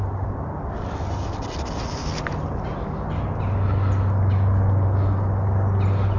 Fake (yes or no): no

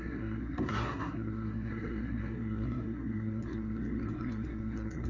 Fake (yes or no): yes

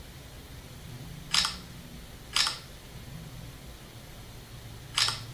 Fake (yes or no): no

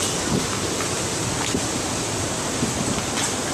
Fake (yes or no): no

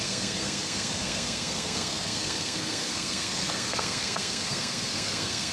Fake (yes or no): yes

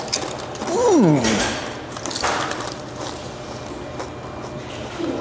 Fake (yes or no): no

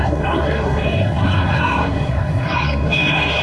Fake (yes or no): yes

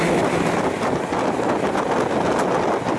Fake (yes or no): no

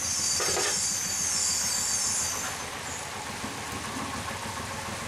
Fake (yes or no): no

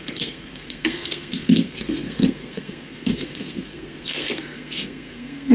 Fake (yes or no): yes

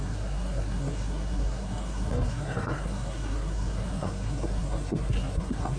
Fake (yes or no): yes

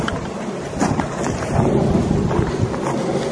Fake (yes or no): no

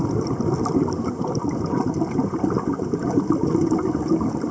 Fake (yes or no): no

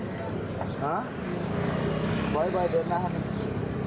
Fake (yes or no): no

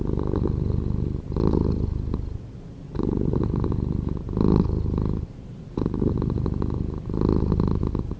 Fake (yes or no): no